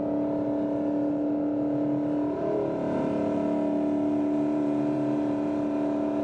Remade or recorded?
remade